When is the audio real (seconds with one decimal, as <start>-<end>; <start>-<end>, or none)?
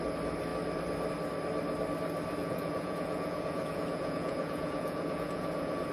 0.0-2.4